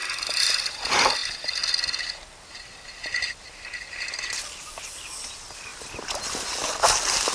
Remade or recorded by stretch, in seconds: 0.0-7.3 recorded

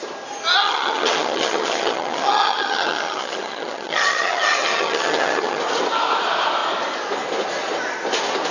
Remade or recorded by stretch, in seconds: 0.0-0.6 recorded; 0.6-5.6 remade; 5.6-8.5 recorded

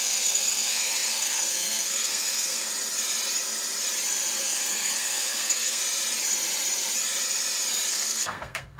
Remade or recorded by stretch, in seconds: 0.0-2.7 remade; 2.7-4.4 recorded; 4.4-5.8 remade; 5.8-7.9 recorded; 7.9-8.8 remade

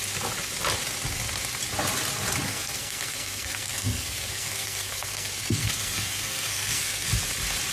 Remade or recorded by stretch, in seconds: 0.0-2.5 recorded; 2.5-7.1 remade; 7.1-7.7 recorded

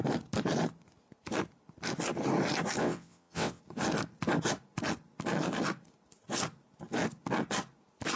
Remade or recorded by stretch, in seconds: 0.0-2.8 recorded; 2.8-3.6 remade; 3.6-8.2 recorded

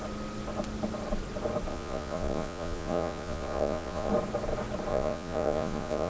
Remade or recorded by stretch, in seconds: 0.0-1.7 recorded; 1.7-4.1 remade; 4.1-4.9 recorded; 4.9-6.1 remade

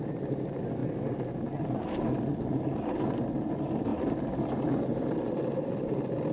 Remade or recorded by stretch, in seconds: 0.0-6.3 recorded

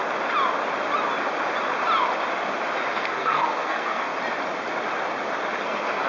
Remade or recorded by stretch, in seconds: 0.0-2.9 recorded; 2.9-4.1 remade; 4.1-5.6 recorded; 5.6-6.1 remade